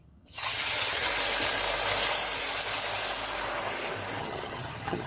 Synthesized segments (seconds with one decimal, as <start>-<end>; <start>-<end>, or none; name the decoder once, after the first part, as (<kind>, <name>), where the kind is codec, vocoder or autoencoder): 0.0-1.1 (vocoder, HiFi-GAN); 4.2-5.1